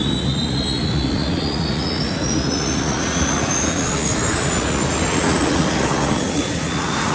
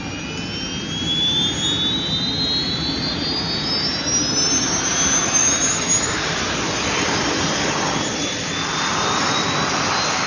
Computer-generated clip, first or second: first